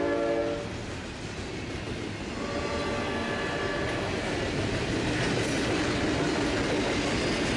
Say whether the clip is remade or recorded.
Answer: recorded